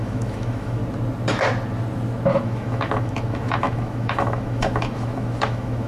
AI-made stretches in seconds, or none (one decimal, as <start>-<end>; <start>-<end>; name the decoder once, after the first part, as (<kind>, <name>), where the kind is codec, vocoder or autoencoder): 0.0-0.8 (autoencoder, DAC-VAE); 2.3-5.9